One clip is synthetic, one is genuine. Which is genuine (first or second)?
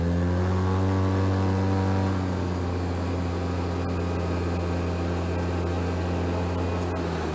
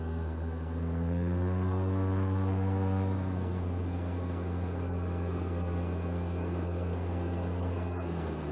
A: first